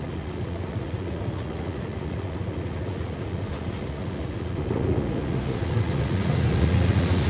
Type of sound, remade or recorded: remade